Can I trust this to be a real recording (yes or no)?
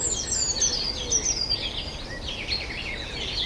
yes